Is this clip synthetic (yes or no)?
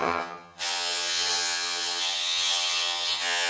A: yes